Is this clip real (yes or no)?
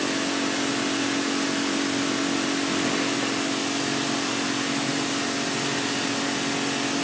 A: yes